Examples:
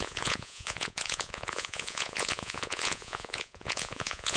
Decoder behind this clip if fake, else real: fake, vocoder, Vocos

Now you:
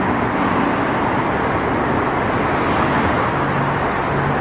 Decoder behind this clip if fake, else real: real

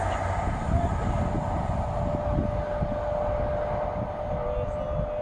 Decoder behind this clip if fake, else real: real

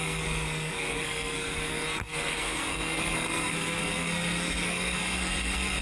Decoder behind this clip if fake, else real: fake, codec, SNAC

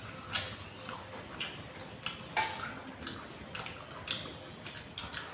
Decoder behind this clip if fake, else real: real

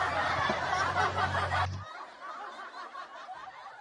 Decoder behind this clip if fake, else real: real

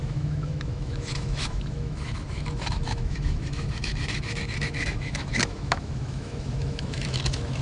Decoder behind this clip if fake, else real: fake, autoencoder, DAC-VAE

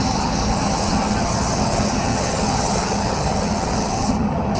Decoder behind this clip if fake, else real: fake, vocoder, HiFi-GAN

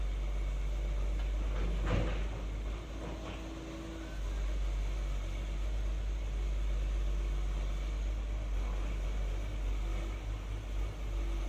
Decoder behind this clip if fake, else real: real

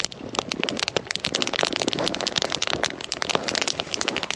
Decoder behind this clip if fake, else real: real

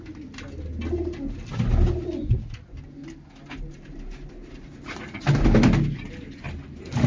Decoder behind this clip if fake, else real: real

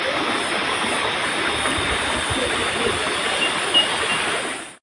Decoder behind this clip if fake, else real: real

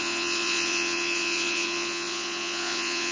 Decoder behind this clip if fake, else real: fake, vocoder, Vocos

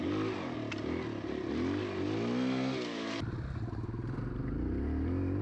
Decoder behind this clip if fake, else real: real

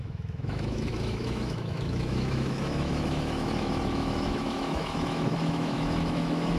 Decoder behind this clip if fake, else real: fake, autoencoder, DAC-VAE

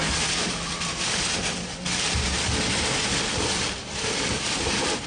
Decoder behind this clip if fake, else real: fake, vocoder, BigVGAN v2